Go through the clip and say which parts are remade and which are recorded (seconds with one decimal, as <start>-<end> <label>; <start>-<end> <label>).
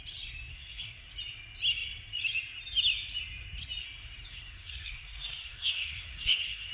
0.0-0.5 recorded; 0.5-1.1 remade; 1.1-4.3 recorded; 4.3-6.7 remade